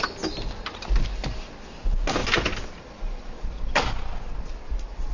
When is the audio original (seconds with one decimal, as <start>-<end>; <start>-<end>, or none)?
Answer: 0.0-5.1